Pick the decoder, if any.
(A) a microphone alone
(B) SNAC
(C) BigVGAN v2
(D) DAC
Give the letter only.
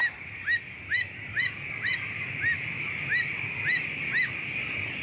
A